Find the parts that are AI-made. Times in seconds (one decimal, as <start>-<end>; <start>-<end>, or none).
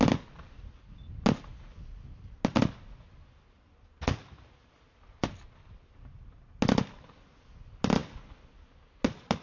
none